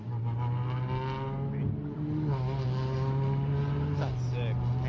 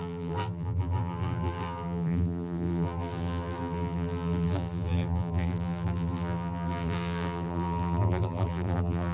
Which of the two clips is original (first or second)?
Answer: first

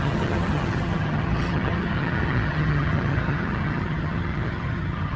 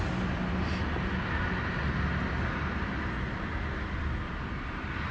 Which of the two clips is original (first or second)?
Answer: second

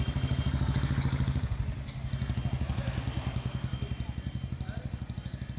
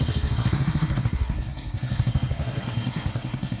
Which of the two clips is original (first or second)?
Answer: first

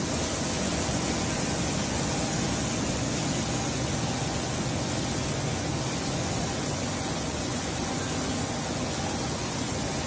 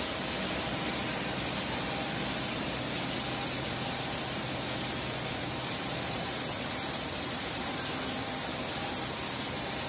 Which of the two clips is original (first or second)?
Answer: second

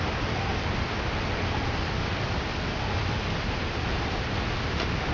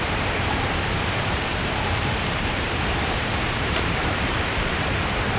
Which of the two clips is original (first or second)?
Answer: first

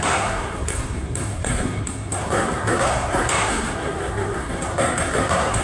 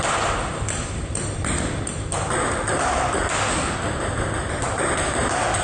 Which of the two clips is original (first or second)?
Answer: second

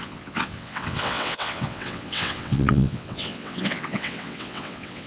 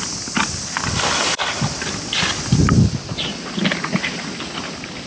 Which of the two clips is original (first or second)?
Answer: second